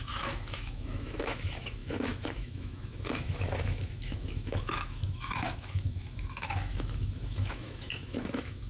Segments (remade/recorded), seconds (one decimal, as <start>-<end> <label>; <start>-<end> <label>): 0.0-8.7 remade

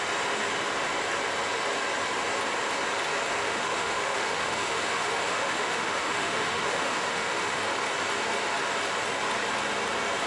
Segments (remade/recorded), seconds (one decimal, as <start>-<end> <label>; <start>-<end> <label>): 0.0-3.4 recorded; 3.4-7.6 remade; 7.6-10.3 recorded

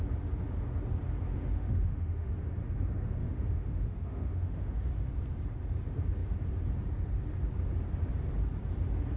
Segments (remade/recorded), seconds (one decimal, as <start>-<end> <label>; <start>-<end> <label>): 0.0-1.3 recorded; 1.3-2.3 remade; 2.3-3.2 recorded; 3.2-4.9 remade; 4.9-9.2 recorded

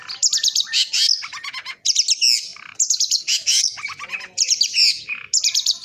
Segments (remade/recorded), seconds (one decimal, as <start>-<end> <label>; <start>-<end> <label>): 0.0-5.8 recorded

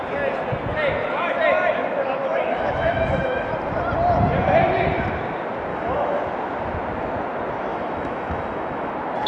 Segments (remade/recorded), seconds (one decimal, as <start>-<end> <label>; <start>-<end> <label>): 0.0-2.2 recorded; 2.2-3.5 remade; 3.5-5.7 recorded; 5.7-6.2 remade; 6.2-7.7 recorded; 7.7-8.9 remade; 8.9-9.3 recorded

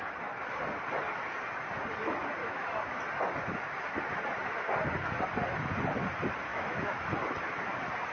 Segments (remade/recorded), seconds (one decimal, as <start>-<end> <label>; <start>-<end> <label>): 0.0-2.4 recorded; 2.4-3.0 remade; 3.0-6.5 recorded; 6.5-7.1 remade; 7.1-8.1 recorded

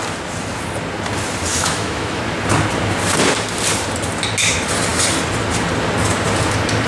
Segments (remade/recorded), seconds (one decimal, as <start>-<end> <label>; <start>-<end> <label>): 0.0-1.5 recorded; 1.5-2.2 remade; 2.2-6.9 recorded